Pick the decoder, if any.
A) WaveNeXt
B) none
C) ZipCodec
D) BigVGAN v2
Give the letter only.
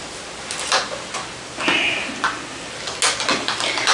B